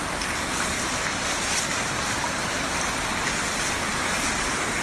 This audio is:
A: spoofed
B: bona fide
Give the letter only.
B